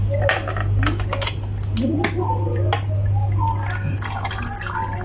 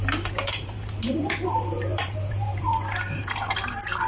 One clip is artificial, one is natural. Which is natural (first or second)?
first